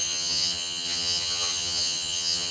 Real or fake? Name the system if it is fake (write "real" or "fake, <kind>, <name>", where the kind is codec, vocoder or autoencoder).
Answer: fake, vocoder, HiFi-GAN